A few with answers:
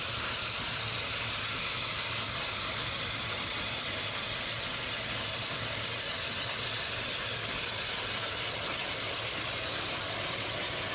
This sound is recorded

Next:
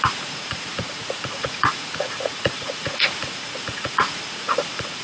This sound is remade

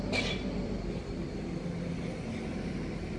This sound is recorded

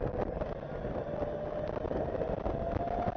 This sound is recorded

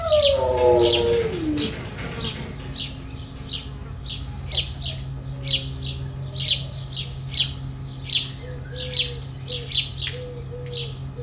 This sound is recorded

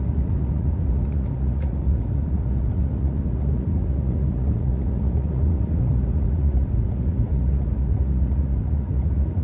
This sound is remade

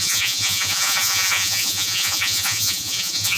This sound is remade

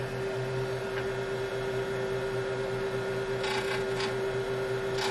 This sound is recorded